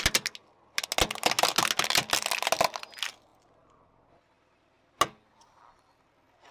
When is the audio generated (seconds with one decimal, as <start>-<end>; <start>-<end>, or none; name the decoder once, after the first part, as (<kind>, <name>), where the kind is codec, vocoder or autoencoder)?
none